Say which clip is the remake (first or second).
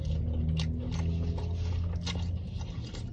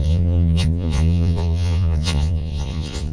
second